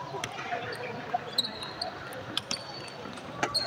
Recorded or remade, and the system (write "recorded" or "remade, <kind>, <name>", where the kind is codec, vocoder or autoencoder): recorded